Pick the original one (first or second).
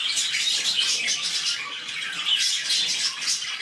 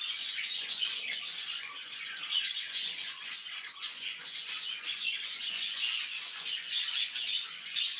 first